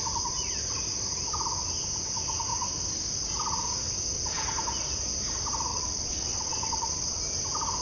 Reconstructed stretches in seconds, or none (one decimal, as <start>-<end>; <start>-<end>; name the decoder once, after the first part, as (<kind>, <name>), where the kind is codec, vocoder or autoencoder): 5.7-7.2 (vocoder, WaveNeXt)